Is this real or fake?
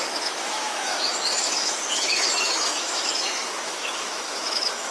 fake